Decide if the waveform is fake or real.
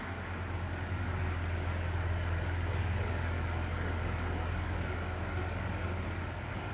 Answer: fake